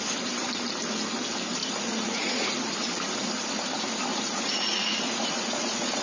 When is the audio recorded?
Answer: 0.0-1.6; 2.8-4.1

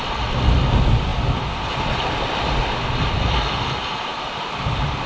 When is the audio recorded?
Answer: 0.0-1.1; 3.2-4.1

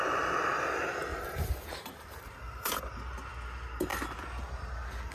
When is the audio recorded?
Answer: 0.0-1.1; 3.3-5.1

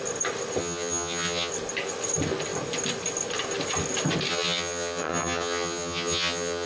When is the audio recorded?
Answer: 0.0-0.6; 1.5-4.3

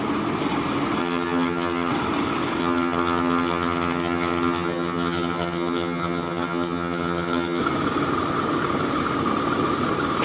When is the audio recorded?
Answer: 0.0-1.0; 1.9-2.6; 7.6-10.2

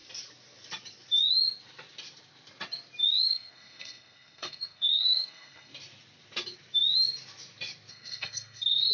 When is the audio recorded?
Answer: 0.0-3.2; 5.7-7.9

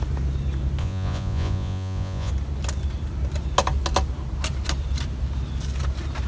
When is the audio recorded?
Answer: 0.0-0.8; 2.3-6.3